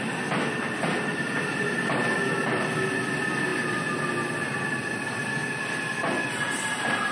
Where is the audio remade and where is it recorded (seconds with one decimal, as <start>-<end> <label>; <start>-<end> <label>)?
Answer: 0.0-7.1 recorded